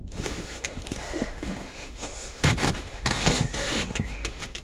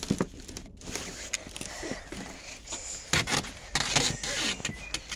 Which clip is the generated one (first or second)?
first